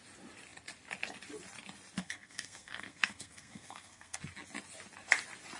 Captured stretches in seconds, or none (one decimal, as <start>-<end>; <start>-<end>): 0.0-2.0; 4.2-5.6